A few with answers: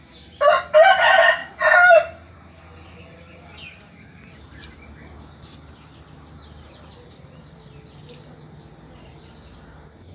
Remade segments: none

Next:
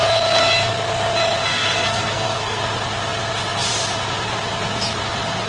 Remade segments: 1.4-2.6 (codec, SNAC)

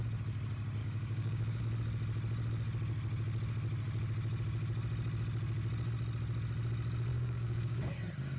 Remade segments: 0.8-1.6 (codec, DAC); 7.1-7.9

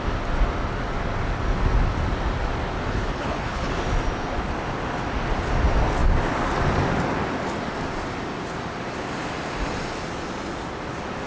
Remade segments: 2.9-3.7 (codec, HILCodec)

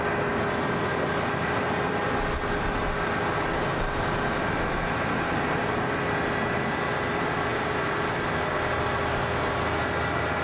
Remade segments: 7.5-8.0 (vocoder, BigVGAN v2)

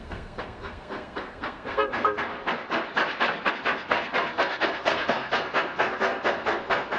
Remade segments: 0.0-2.3 (codec, SNAC); 3.5-7.0

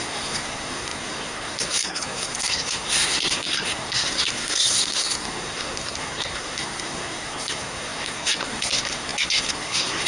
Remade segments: 0.0-10.1 (codec, SNAC)

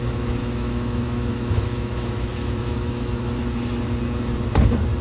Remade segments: 0.4-3.4 (autoencoder, DAC-VAE)